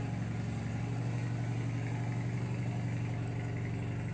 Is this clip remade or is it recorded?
recorded